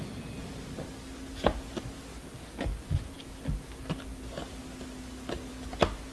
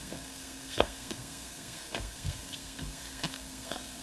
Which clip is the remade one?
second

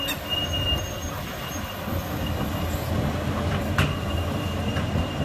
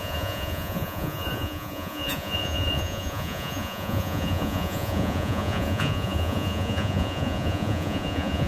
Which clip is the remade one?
second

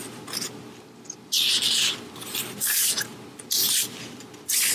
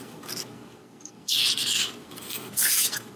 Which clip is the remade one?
second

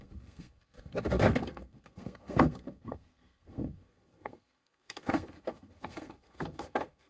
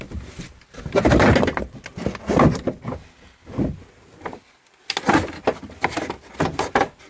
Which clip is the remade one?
first